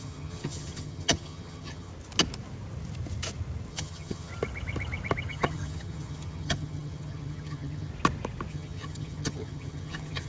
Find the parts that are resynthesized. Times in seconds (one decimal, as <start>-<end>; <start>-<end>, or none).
0.0-1.9; 3.7-4.3; 5.3-7.9; 8.5-10.3